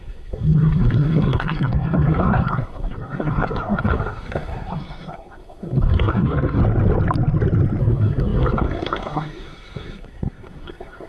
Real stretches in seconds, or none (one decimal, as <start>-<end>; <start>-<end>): 6.6-7.8